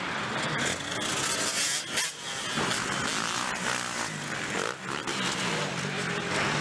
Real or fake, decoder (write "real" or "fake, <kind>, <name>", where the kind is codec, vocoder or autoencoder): real